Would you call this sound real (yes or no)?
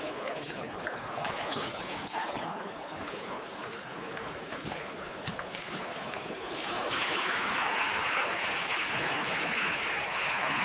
no